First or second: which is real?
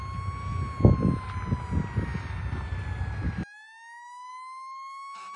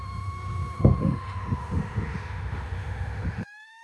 first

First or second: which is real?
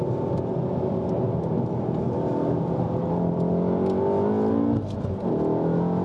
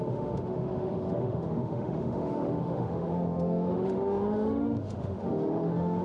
first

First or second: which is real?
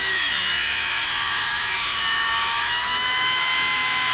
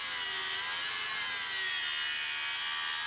second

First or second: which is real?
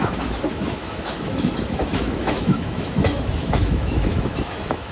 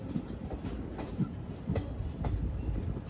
second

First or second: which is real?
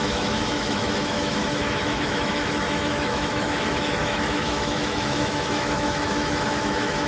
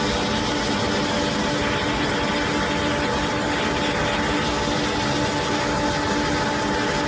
second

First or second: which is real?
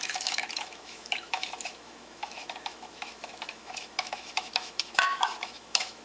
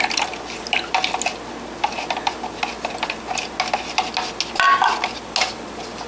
second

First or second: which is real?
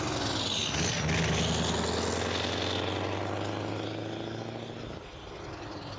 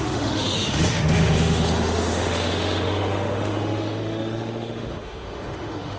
first